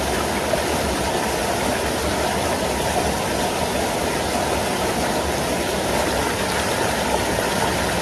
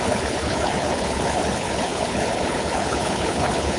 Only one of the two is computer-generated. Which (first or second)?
second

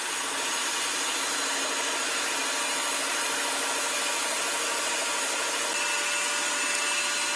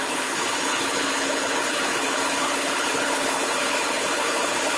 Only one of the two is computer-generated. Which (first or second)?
second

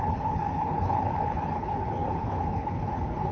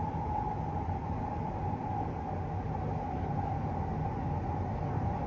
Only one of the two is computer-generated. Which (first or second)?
first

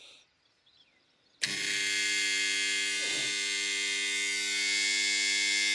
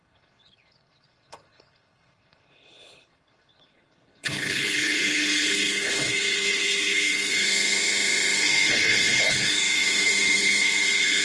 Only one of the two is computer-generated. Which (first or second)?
second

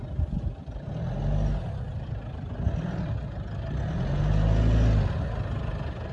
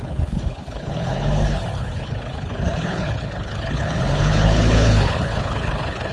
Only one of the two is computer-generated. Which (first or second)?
second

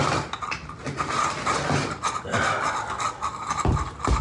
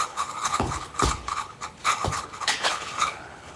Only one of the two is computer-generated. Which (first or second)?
second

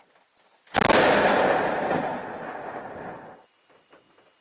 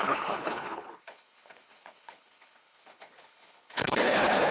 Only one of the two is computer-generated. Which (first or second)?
second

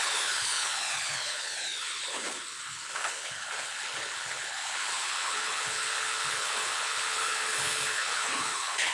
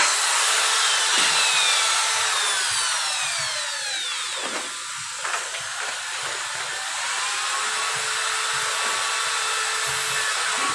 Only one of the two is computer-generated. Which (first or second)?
first